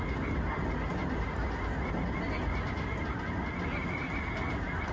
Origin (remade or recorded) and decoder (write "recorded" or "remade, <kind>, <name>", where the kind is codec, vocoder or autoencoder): recorded